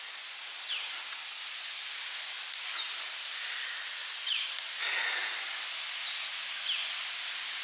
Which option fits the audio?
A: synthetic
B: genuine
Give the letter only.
B